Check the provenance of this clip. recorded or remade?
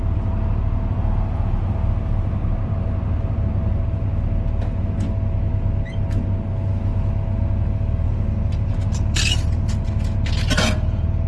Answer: recorded